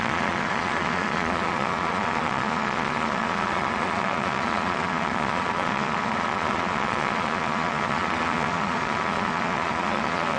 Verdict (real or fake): fake